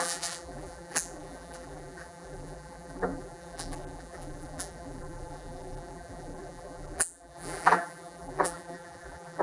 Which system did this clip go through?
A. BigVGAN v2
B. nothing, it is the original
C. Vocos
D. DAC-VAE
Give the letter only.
A